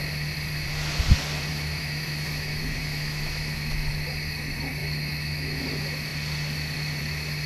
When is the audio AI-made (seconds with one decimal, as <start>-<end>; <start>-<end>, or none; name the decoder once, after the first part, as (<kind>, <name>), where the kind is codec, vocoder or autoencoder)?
1.5-3.9 (autoencoder, DAC-VAE); 4.8-5.6

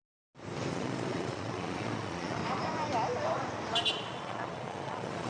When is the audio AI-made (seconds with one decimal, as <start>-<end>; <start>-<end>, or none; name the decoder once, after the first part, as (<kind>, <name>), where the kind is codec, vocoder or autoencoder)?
0.7-2.4 (vocoder, Vocos); 3.9-5.3

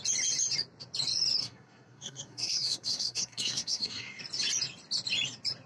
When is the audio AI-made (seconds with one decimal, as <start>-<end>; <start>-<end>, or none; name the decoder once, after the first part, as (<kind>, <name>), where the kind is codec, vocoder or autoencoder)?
1.4-4.2 (codec, SNAC)